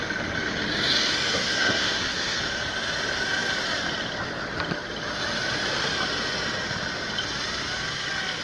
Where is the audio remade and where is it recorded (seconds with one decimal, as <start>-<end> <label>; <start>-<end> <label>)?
0.0-1.3 recorded; 1.3-2.4 remade; 2.4-8.4 recorded